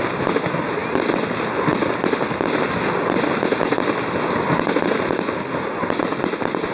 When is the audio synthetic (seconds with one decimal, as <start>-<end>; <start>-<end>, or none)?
none